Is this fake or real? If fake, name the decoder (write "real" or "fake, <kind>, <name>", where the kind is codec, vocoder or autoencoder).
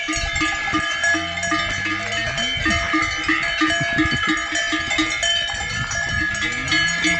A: real